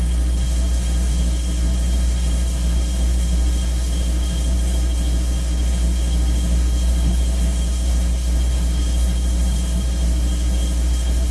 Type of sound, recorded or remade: remade